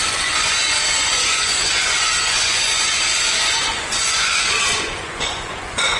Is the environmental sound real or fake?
fake